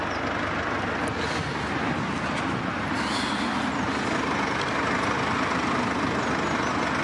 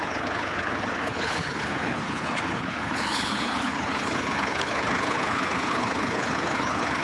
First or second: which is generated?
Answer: second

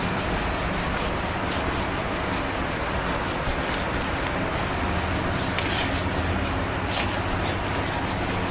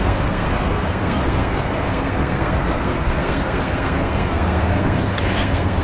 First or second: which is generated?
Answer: second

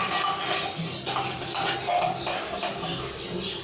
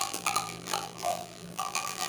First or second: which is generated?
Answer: second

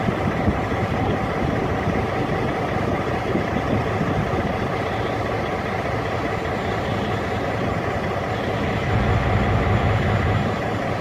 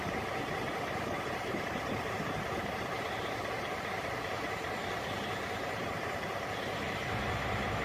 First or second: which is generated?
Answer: second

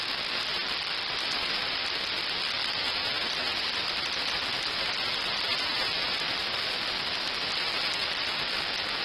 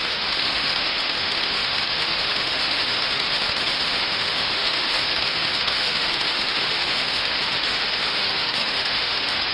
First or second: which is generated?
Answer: second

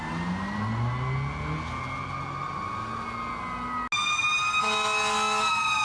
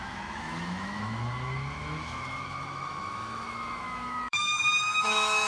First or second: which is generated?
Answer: second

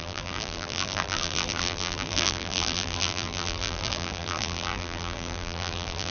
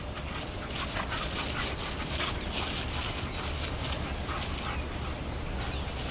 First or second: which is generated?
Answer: first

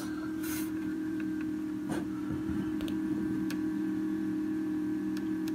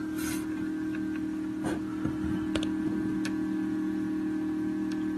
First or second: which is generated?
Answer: first